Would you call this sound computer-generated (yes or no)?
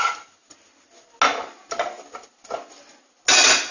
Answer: no